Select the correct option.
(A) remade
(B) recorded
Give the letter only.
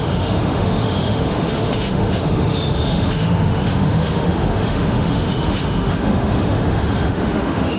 A